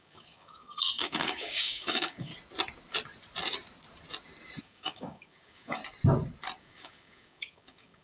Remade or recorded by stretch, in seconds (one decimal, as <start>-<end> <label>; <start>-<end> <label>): 0.0-2.3 remade; 2.3-4.6 recorded; 4.6-5.8 remade; 5.8-6.6 recorded; 6.6-8.0 remade